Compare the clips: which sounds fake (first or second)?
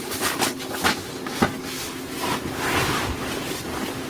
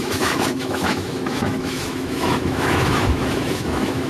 second